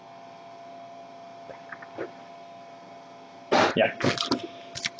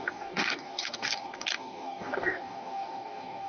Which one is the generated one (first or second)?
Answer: second